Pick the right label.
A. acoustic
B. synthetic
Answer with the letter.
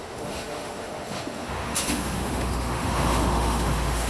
B